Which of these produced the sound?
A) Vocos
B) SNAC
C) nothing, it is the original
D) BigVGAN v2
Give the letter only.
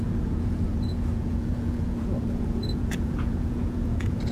A